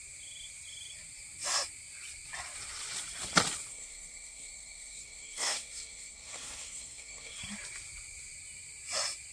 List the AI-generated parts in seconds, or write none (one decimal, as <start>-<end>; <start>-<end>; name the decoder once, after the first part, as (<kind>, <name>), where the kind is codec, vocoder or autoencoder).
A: 3.7-7.4 (codec, SNAC)